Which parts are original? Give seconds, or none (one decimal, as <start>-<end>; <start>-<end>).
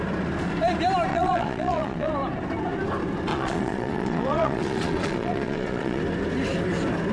0.0-1.1; 2.1-3.3; 6.0-7.1